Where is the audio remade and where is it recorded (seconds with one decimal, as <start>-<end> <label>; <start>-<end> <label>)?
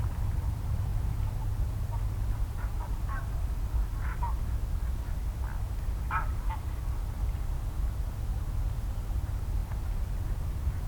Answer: 0.0-10.9 recorded